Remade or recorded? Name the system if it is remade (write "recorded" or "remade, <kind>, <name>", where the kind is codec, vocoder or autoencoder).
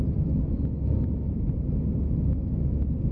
recorded